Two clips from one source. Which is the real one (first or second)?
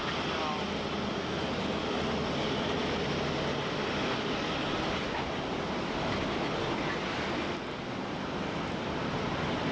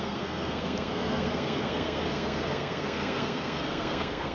first